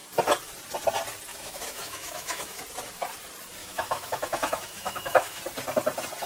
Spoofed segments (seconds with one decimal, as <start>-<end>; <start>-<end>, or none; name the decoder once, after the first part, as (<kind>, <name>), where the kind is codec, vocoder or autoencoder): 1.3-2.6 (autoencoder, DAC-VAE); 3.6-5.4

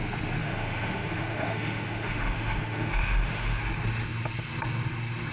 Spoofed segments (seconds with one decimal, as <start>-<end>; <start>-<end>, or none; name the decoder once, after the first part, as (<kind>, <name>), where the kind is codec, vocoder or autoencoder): 0.4-3.6 (autoencoder, DAC-VAE)

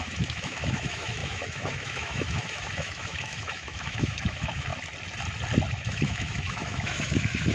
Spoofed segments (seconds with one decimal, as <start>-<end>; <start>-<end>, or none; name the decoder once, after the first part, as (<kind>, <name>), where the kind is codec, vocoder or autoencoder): 0.0-4.7 (autoencoder, DAC-VAE); 5.7-7.5

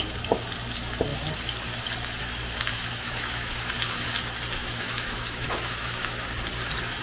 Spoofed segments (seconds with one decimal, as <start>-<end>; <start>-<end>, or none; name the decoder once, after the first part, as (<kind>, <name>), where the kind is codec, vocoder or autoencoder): 2.7-3.7 (autoencoder, DAC-VAE); 4.6-6.3